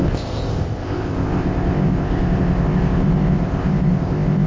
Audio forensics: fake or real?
fake